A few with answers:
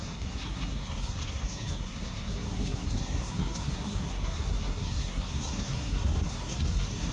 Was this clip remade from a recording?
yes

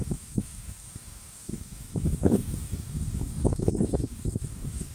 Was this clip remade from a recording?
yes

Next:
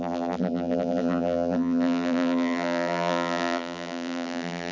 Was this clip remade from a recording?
yes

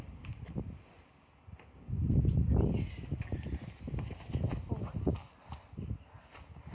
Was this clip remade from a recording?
no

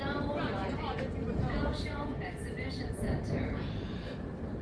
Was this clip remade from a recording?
yes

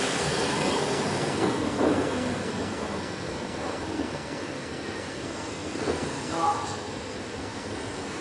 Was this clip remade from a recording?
yes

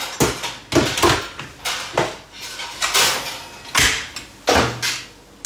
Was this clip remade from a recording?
no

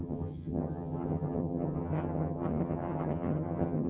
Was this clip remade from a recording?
yes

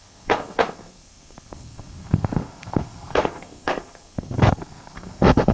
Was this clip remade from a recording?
yes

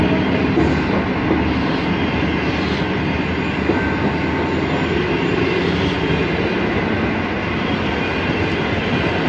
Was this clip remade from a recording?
no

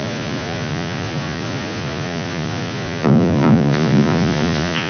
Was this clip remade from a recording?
yes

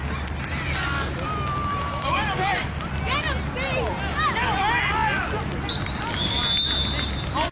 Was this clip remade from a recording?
no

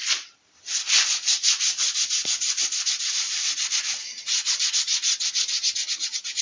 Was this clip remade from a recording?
no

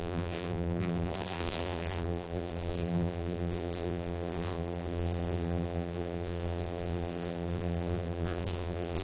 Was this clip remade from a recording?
yes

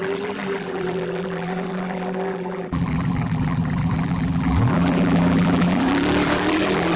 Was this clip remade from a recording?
yes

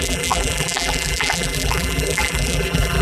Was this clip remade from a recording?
yes